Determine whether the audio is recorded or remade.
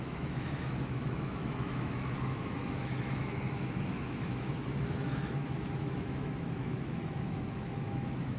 remade